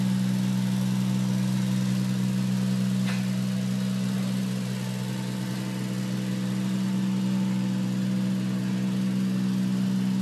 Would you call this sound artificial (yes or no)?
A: no